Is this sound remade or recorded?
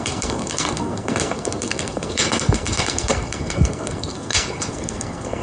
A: remade